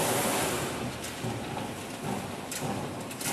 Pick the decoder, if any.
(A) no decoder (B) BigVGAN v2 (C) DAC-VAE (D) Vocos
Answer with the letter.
A